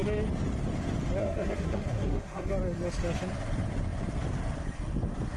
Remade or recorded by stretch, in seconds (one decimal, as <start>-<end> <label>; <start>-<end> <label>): 0.0-1.2 recorded; 1.2-2.5 remade; 2.5-5.4 recorded